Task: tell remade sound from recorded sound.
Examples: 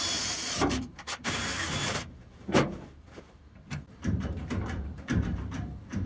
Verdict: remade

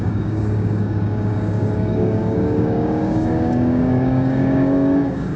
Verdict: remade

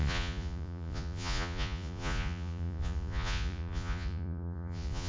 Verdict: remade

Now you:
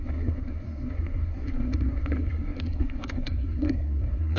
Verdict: remade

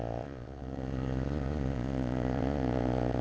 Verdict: remade